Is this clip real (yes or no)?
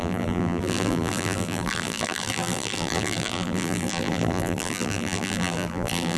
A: no